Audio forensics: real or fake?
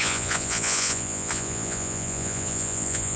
fake